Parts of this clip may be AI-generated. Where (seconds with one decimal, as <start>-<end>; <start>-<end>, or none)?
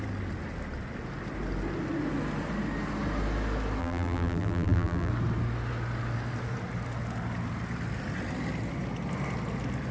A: 3.8-5.1